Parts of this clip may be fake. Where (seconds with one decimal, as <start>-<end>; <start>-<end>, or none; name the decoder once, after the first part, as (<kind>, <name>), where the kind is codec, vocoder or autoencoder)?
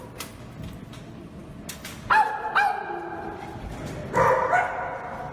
none